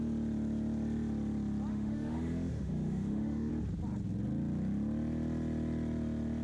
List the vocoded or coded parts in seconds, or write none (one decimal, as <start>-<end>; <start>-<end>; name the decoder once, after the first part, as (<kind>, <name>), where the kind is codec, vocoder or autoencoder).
1.7-3.5 (autoencoder, DAC-VAE)